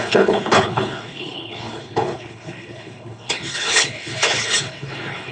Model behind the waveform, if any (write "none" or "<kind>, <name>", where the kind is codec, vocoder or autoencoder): codec, HILCodec